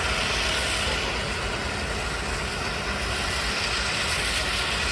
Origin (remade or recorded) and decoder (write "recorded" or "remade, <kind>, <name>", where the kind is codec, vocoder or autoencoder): recorded